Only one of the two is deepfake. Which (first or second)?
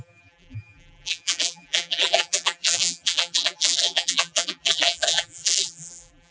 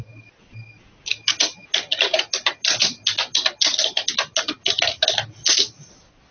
first